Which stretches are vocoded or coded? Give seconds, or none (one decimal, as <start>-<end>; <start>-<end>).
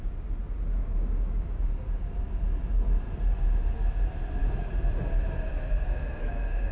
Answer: 0.7-1.7; 4.4-5.0; 5.5-6.7